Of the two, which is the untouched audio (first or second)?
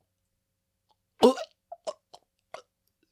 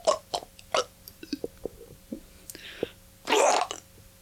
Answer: second